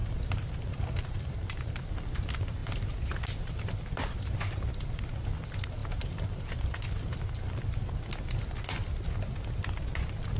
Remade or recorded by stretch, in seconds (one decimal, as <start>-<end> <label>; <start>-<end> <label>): 0.0-1.9 remade; 1.9-5.8 recorded; 5.8-6.4 remade; 6.4-10.4 recorded